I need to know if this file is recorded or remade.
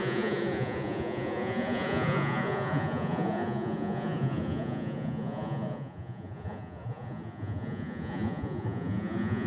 remade